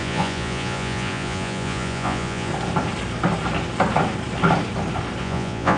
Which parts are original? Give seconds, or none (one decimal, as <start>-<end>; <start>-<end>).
2.5-5.2